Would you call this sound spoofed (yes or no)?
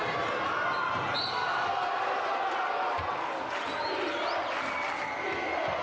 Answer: no